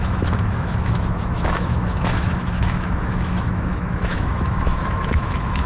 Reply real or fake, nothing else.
fake